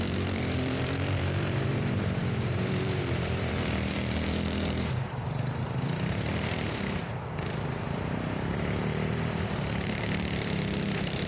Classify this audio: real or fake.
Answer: fake